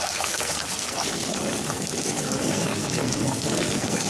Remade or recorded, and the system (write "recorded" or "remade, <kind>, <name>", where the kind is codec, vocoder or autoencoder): remade, codec, SNAC